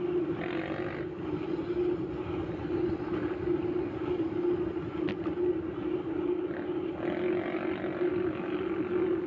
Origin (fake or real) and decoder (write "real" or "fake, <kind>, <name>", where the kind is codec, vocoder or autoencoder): real